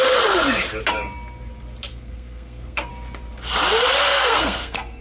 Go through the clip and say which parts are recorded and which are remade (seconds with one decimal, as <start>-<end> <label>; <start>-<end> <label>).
0.0-1.9 recorded; 1.9-2.9 remade; 2.9-4.1 recorded; 4.1-5.0 remade